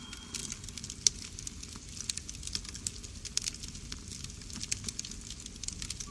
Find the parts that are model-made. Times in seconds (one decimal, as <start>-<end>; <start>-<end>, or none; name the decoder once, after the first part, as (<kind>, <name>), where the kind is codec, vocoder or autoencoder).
none